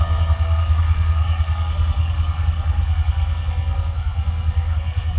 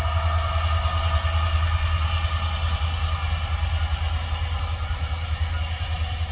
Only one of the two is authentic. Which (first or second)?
second